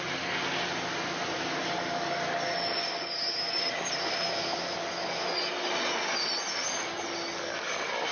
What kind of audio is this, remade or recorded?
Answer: recorded